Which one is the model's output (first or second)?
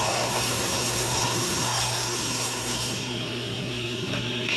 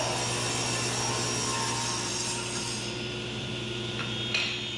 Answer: first